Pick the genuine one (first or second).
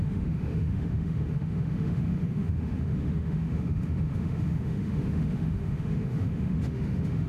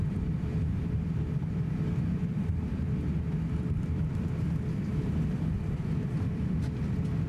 second